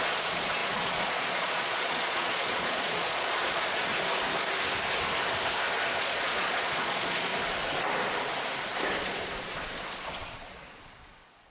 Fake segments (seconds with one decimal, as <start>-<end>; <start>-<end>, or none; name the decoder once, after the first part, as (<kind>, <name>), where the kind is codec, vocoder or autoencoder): 0.0-3.9 (vocoder, Vocos); 6.0-7.3; 9.0-11.5